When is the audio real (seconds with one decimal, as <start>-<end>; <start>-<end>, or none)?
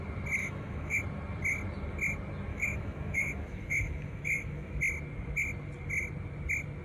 0.0-0.4; 1.0-2.5; 4.8-6.8